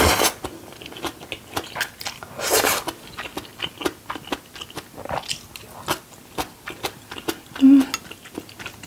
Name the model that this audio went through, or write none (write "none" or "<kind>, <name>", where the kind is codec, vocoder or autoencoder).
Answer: none